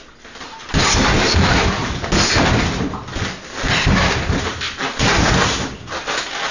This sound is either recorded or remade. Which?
recorded